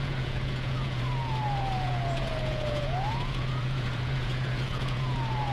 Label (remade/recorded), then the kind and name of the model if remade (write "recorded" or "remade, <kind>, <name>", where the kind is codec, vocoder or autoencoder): remade, vocoder, Vocos